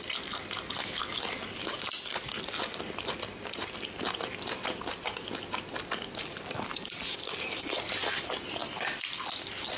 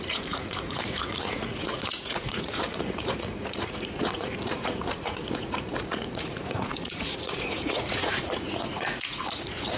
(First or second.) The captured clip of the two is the first